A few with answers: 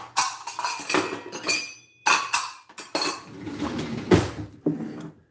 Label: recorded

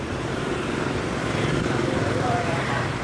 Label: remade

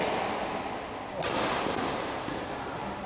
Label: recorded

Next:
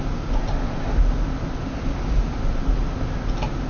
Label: recorded